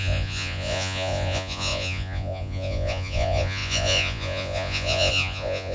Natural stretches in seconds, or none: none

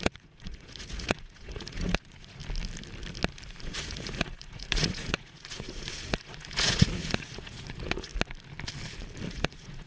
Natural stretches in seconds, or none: 2.4-3.6; 8.1-9.3

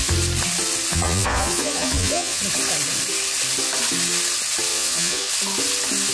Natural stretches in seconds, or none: 0.0-0.9; 2.4-4.7; 5.3-6.1

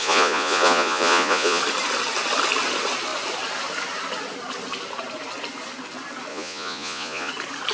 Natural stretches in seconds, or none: 1.6-6.3; 7.3-7.7

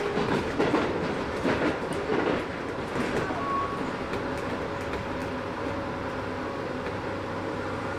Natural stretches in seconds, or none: 0.0-8.0